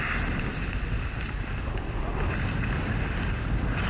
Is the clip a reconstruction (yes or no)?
no